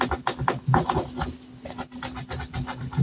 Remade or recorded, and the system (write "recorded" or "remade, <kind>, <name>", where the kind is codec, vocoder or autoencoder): recorded